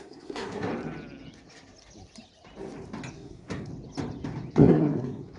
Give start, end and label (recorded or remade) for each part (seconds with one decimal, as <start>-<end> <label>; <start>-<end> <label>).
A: 0.0-0.7 remade; 0.7-3.1 recorded; 3.1-3.7 remade; 3.7-4.5 recorded; 4.5-5.4 remade